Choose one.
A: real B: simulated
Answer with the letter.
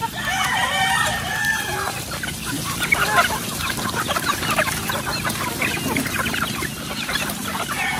A